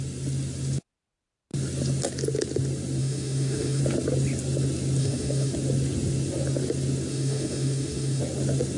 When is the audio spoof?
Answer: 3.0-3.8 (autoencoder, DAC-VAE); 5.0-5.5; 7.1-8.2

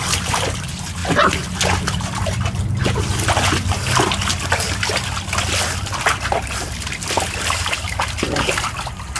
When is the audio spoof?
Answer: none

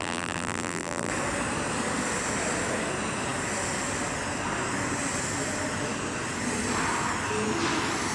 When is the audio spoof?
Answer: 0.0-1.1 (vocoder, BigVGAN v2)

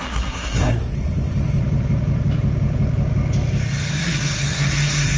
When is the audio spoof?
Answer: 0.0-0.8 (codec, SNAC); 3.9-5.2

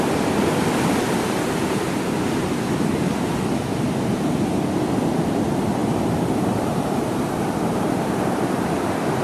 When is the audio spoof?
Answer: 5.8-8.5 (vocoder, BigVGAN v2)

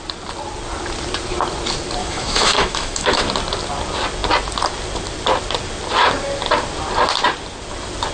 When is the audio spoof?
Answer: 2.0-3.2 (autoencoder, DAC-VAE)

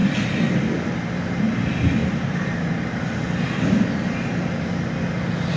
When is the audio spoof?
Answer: 2.0-3.0 (vocoder, BigVGAN v2)

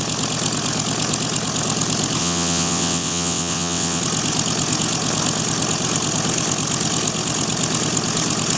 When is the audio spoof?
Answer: 2.2-4.0 (vocoder, WaveNeXt)